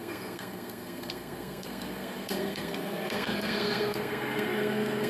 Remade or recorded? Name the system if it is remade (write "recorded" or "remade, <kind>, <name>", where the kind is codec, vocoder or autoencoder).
remade, codec, SNAC